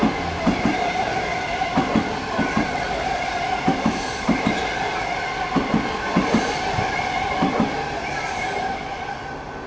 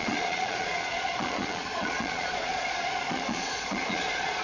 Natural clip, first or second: first